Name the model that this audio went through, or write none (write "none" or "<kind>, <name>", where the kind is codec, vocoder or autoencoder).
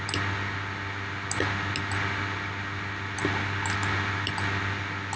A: none